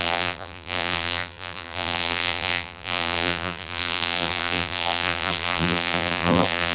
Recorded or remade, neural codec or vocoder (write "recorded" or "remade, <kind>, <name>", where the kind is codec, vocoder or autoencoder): remade, vocoder, BigVGAN v2